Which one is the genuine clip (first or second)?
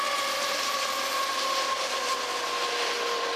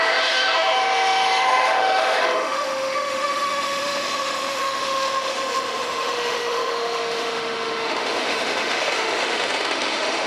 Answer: first